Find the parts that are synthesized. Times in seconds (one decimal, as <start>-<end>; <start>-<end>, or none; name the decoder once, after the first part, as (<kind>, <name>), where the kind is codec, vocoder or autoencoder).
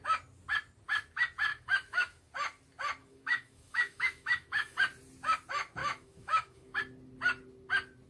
1.5-2.3 (autoencoder, DAC-VAE); 3.0-4.8; 5.8-6.8